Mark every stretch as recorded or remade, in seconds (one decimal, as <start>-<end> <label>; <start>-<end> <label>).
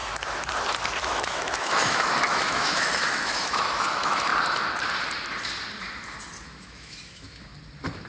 0.0-1.0 recorded; 1.0-4.3 remade; 4.3-6.4 recorded; 6.4-7.5 remade; 7.5-8.1 recorded